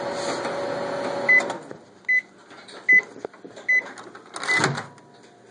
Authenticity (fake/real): real